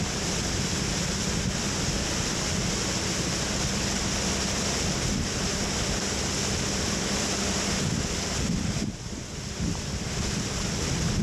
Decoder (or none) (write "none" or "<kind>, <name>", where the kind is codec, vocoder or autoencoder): none